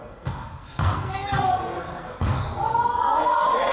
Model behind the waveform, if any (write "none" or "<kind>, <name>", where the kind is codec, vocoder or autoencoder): codec, SNAC